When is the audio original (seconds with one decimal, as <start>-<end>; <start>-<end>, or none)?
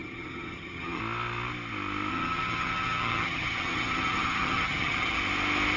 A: 1.0-2.1; 5.2-5.8